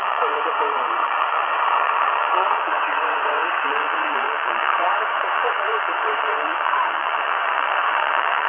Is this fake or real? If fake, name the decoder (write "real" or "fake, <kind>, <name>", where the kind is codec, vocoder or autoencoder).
fake, vocoder, WaveNeXt